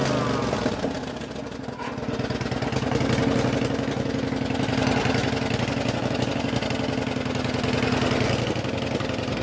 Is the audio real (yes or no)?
yes